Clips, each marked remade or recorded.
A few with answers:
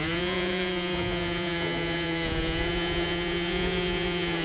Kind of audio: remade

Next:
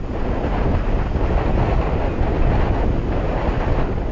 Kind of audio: recorded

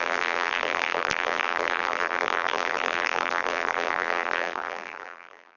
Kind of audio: remade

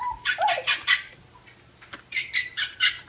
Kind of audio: recorded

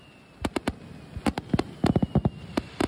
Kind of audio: recorded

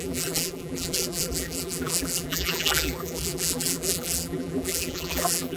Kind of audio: remade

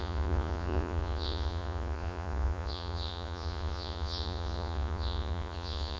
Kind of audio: remade